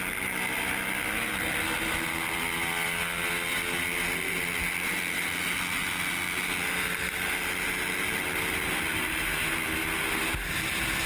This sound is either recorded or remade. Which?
recorded